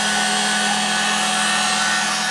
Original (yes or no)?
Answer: yes